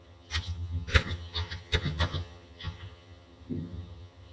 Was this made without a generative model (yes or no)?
no